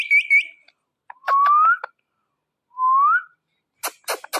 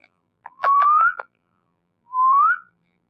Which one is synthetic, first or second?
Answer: second